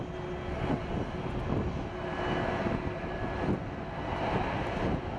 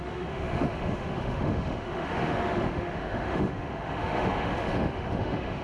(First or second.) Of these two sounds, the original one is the first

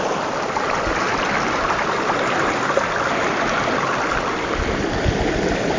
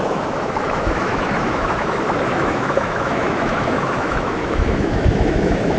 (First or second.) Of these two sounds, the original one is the first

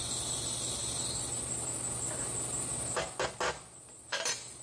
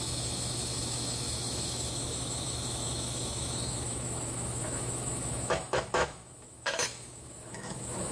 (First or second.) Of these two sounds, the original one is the first